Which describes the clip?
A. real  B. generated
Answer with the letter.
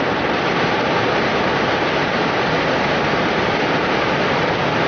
A